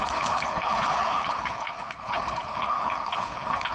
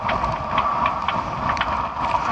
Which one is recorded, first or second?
second